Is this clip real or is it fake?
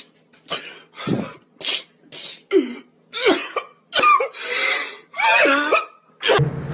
real